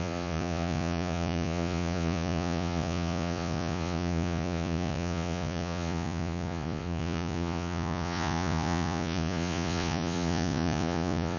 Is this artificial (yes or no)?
yes